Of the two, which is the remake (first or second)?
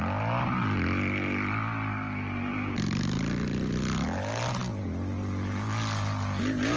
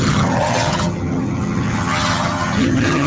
second